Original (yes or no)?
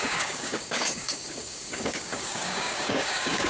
no